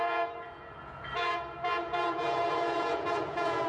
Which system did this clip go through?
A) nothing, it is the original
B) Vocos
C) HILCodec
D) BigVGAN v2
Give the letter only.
B